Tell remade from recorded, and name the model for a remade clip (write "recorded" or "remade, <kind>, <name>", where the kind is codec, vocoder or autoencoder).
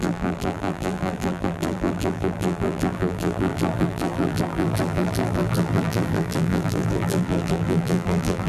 remade, vocoder, BigVGAN v2